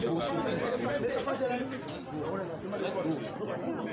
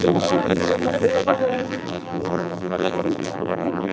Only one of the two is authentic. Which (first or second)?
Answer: first